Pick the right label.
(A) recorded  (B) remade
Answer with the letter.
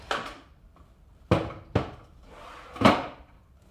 A